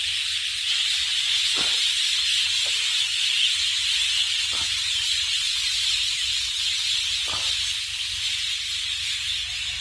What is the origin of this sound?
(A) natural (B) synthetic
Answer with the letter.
A